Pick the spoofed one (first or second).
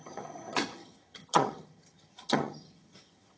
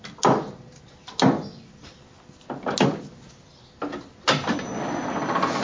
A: first